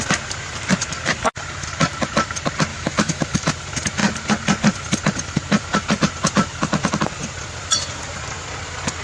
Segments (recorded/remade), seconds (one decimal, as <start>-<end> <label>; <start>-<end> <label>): 0.0-2.7 recorded; 2.7-3.5 remade; 3.5-9.0 recorded